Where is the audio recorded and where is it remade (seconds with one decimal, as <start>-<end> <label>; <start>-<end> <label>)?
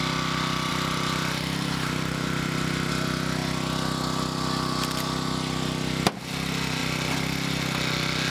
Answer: 0.0-0.7 recorded; 0.7-2.9 remade; 2.9-8.3 recorded